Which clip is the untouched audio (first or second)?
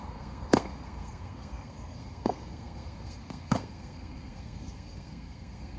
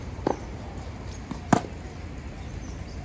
second